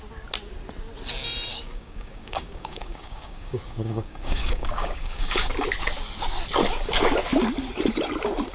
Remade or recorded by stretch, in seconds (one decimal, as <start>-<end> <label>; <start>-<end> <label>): 0.0-1.5 recorded; 1.5-5.5 remade; 5.5-8.5 recorded